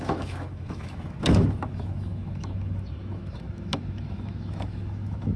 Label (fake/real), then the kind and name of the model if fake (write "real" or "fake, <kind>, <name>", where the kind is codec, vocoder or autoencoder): fake, autoencoder, DAC-VAE